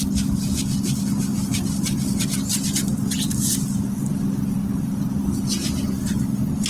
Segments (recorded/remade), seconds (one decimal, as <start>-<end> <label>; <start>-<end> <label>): 0.0-6.7 recorded